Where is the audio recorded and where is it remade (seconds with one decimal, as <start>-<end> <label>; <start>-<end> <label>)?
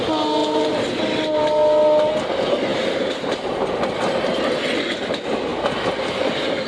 0.0-0.4 recorded; 0.4-1.2 remade; 1.2-2.7 recorded; 2.7-3.3 remade; 3.3-6.7 recorded